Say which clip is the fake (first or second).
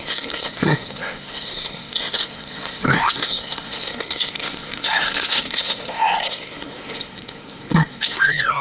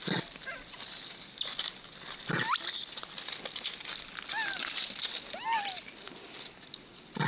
first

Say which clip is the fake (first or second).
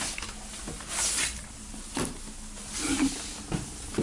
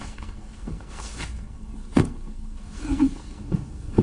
second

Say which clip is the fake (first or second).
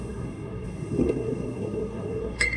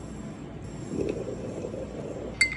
first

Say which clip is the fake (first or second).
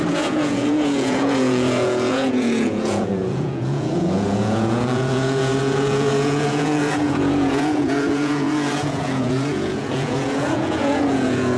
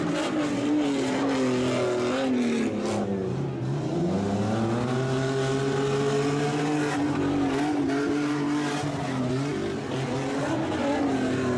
first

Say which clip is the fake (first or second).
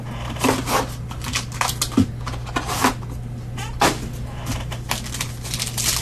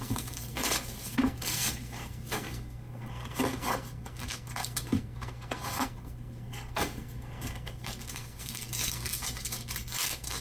second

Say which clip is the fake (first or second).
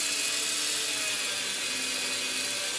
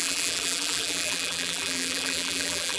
second